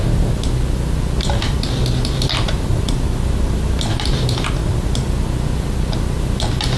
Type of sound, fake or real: real